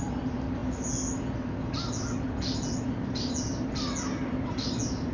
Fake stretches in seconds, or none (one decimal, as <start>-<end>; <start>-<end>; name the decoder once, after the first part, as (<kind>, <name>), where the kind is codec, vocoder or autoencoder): none